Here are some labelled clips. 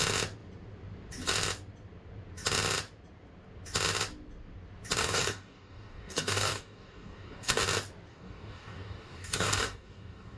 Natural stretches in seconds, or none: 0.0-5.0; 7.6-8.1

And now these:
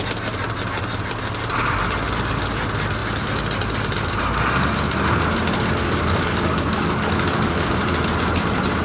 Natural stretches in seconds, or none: 0.0-5.8; 7.7-8.8

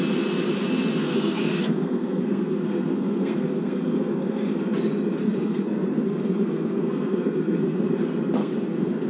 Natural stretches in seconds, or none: 0.0-1.0; 4.6-5.2; 7.9-8.4

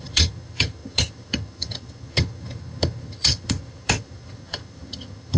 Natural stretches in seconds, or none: none

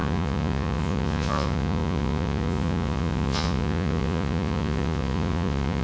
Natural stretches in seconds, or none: none